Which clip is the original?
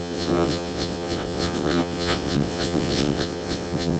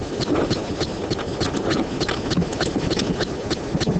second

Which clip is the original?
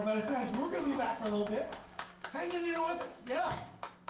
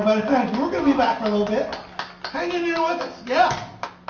second